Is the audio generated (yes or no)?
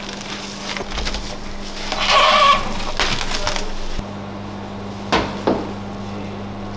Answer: no